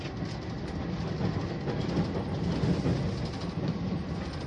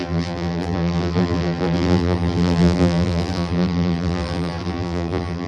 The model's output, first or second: second